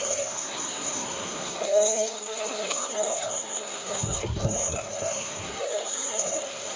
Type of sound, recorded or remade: remade